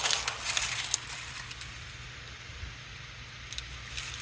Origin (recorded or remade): recorded